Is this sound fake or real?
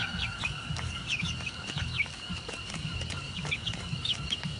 fake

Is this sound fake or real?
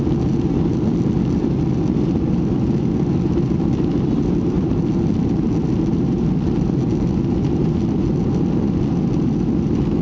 real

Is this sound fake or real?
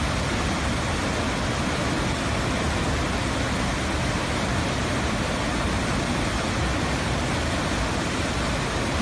real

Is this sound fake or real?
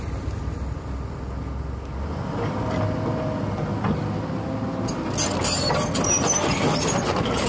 real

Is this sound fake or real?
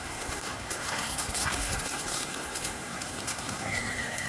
fake